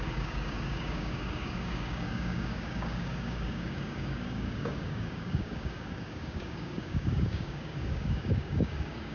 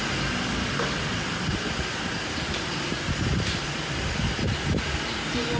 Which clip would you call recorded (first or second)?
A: second